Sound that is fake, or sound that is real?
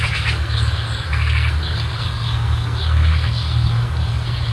fake